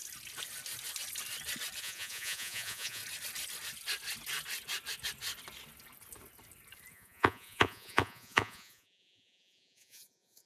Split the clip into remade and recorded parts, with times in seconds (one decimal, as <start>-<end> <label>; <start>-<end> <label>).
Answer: 0.0-1.8 recorded; 1.8-3.0 remade; 3.0-6.9 recorded; 6.9-10.5 remade